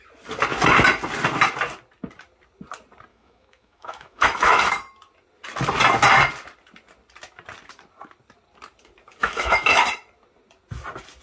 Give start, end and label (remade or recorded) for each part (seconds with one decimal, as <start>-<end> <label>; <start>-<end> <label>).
0.0-3.1 recorded; 3.1-4.7 remade; 4.7-9.2 recorded; 9.2-9.8 remade; 9.8-11.2 recorded